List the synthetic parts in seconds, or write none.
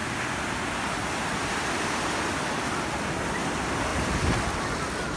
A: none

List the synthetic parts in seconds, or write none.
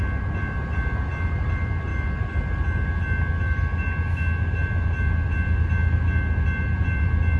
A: none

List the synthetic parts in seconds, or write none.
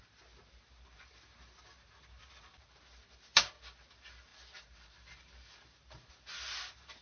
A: none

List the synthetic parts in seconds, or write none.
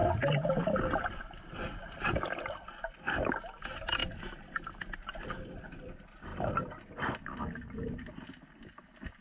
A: none